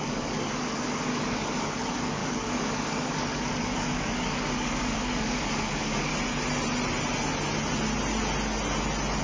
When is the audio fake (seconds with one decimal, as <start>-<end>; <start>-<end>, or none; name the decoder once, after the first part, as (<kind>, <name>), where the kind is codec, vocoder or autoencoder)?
0.0-6.1 (codec, DAC)